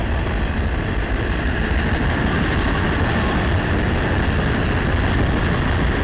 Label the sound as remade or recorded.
recorded